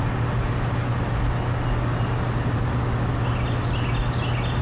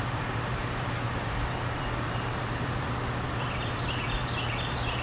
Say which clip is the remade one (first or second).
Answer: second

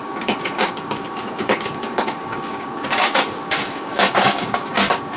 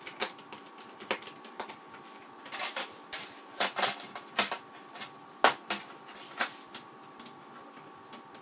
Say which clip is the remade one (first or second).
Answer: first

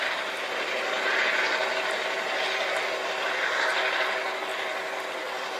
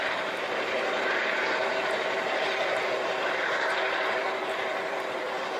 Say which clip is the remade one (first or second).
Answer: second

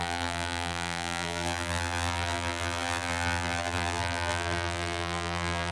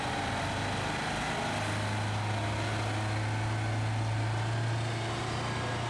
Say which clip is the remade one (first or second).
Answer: first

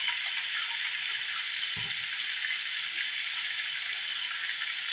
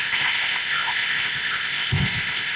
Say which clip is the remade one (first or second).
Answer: second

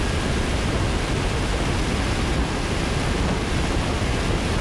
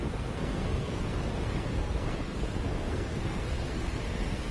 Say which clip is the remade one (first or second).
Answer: second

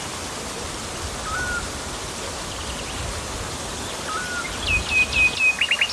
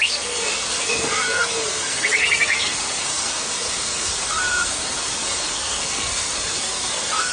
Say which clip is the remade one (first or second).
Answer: second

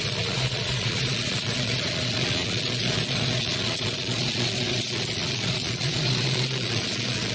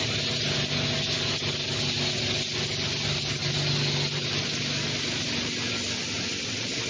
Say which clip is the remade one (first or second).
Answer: first